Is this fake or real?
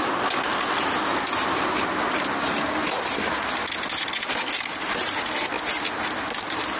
real